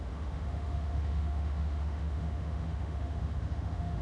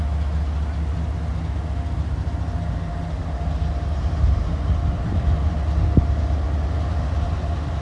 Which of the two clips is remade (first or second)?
first